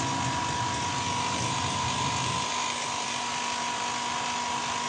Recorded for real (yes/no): yes